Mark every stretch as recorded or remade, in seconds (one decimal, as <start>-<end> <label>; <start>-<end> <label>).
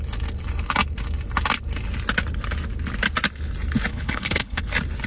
0.0-3.9 recorded; 3.9-4.6 remade; 4.6-5.1 recorded